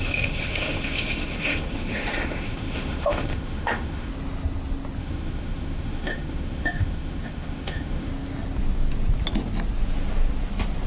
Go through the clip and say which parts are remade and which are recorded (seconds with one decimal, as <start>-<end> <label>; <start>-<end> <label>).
0.0-4.1 remade; 4.1-5.0 recorded; 5.0-8.1 remade; 8.1-10.9 recorded